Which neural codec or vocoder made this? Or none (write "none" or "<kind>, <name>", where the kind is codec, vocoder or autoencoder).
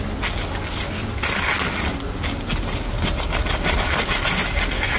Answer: none